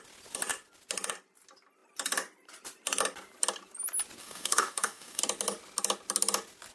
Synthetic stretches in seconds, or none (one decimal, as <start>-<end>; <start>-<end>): 4.2-5.2